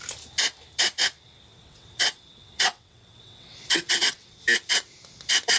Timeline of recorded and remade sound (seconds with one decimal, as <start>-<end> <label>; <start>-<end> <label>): 0.0-1.5 recorded; 1.5-4.4 remade; 4.4-5.6 recorded